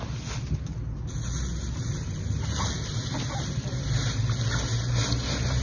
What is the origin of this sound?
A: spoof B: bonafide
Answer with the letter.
B